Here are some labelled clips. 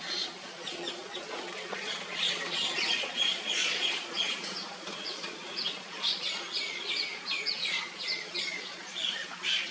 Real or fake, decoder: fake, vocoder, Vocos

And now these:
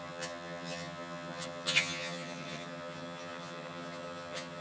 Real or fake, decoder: fake, vocoder, HiFi-GAN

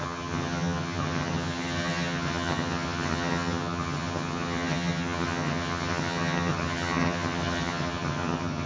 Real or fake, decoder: fake, vocoder, HiFi-GAN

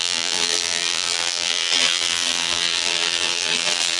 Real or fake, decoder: fake, vocoder, BigVGAN v2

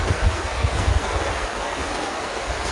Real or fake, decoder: fake, codec, SNAC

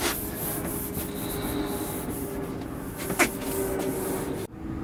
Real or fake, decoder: real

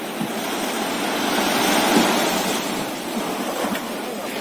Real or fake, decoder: real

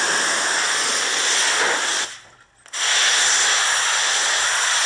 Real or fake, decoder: real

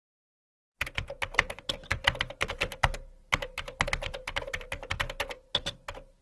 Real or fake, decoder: real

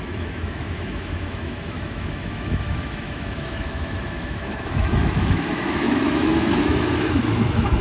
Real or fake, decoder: fake, autoencoder, DAC-VAE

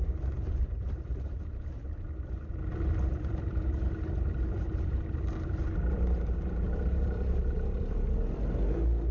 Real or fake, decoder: fake, vocoder, BigVGAN v2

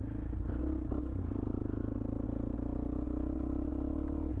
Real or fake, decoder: real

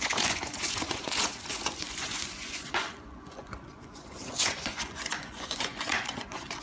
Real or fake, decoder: fake, vocoder, Vocos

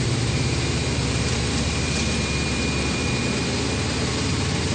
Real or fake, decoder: fake, vocoder, BigVGAN v2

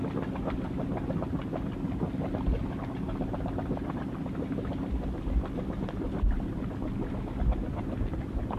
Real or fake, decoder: real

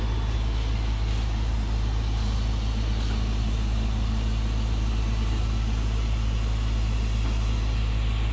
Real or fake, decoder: real